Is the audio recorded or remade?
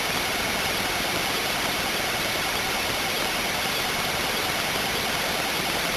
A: recorded